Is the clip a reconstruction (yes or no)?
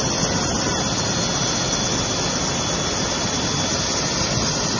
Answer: no